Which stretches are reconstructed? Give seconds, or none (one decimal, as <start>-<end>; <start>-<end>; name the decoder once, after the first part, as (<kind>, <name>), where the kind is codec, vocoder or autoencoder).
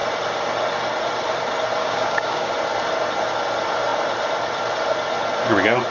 1.8-2.5 (codec, DAC)